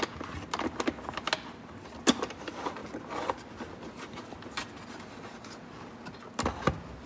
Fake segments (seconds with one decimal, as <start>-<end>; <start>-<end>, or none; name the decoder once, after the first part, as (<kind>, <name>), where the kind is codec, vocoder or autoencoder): none